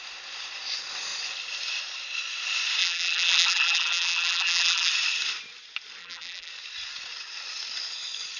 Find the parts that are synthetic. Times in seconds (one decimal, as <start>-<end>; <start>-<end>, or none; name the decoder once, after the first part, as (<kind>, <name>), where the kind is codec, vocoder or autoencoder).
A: 2.8-4.9 (vocoder, BigVGAN v2); 6.0-6.5